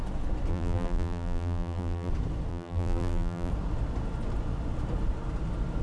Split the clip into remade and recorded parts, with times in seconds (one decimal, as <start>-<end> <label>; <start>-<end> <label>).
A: 0.0-0.5 recorded; 0.5-2.1 remade; 2.1-2.5 recorded; 2.5-3.5 remade; 3.5-5.8 recorded